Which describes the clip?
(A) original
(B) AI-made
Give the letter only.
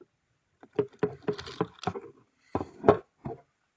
A